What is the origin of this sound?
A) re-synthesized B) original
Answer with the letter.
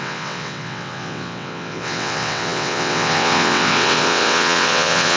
A